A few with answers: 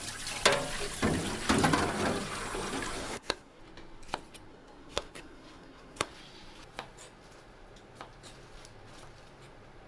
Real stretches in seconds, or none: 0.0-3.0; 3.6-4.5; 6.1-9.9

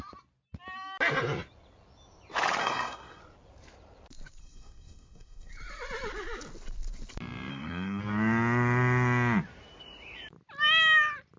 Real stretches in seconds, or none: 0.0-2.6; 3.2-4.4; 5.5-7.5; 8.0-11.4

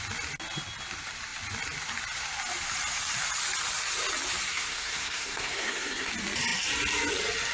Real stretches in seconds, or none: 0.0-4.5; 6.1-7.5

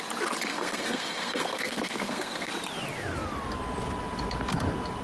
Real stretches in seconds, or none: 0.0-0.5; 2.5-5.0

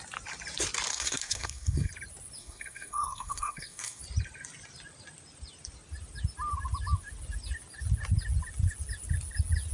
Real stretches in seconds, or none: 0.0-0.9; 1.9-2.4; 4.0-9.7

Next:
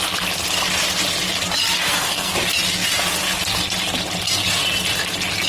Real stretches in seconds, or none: 0.0-1.8; 2.3-5.5

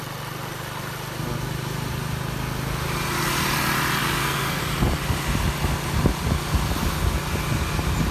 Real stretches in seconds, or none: 0.0-4.0; 4.6-8.1

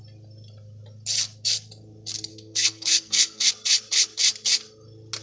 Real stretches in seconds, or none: 0.0-2.3; 3.5-5.2